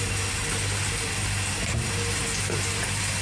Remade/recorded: recorded